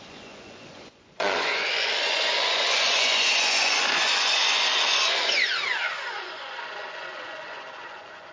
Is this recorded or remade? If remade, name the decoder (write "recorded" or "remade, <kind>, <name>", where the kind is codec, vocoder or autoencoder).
remade, vocoder, Vocos